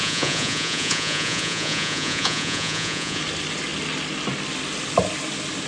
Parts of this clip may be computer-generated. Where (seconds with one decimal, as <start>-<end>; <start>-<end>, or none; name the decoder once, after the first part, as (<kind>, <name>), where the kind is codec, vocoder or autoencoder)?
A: 0.0-3.2 (vocoder, Vocos)